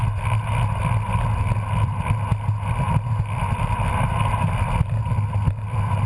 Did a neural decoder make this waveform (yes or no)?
no